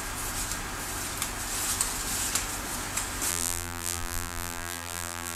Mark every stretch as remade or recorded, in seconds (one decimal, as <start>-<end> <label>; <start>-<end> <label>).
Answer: 0.0-3.3 recorded; 3.3-5.4 remade